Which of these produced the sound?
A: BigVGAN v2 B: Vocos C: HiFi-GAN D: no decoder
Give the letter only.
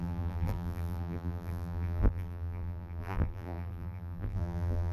A